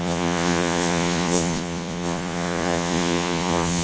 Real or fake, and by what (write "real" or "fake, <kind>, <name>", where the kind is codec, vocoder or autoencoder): fake, vocoder, Vocos